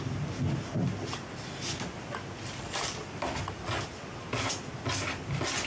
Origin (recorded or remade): recorded